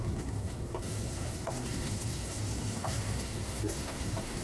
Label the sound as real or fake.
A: fake